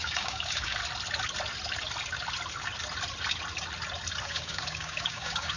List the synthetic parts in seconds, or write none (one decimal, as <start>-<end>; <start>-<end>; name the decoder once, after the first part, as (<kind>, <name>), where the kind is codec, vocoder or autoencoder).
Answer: 0.0-0.8 (codec, DAC); 4.2-5.6